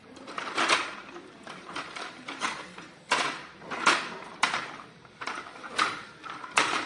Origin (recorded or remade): remade